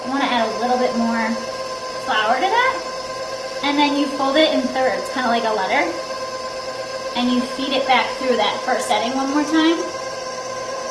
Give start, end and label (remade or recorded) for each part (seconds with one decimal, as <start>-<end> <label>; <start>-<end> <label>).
0.0-1.8 recorded; 1.8-2.7 remade; 2.7-6.9 recorded; 6.9-8.9 remade; 8.9-9.3 recorded; 9.3-10.2 remade; 10.2-10.9 recorded